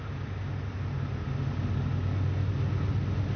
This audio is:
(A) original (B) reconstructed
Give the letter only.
A